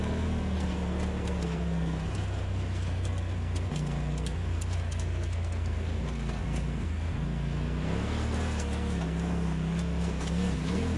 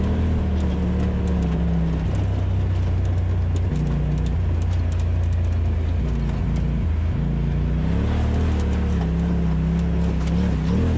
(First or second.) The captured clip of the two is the second